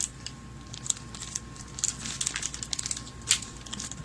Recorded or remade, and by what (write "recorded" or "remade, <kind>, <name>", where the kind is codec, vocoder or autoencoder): recorded